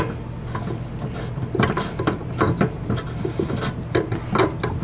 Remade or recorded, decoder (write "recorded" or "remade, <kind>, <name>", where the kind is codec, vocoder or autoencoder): recorded